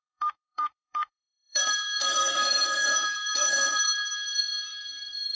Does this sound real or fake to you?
fake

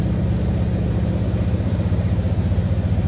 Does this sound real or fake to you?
real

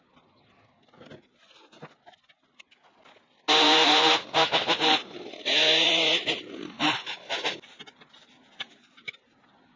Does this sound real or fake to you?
real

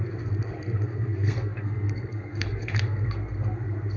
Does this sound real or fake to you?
fake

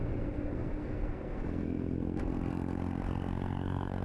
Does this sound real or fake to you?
fake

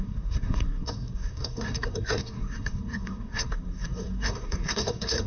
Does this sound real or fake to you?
fake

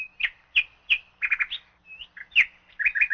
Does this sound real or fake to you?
real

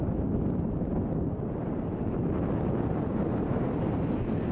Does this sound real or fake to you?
real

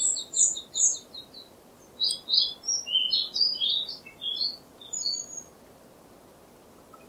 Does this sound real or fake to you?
real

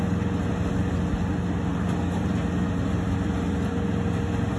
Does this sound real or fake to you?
real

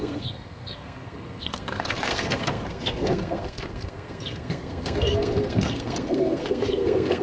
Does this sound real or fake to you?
fake